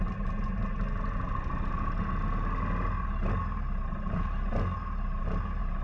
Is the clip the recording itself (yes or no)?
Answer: yes